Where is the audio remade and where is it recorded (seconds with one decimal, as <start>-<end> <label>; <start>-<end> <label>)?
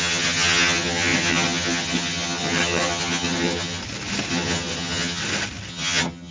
0.0-3.8 remade; 3.8-4.3 recorded; 4.3-5.2 remade; 5.2-5.7 recorded; 5.7-6.3 remade